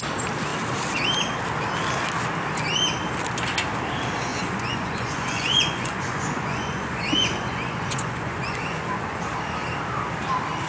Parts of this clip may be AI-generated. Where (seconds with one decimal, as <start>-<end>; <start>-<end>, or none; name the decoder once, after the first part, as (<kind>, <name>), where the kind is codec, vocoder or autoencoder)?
4.3-9.2 (vocoder, Vocos)